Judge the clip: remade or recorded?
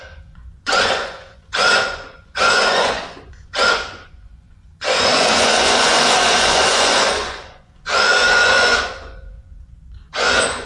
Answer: remade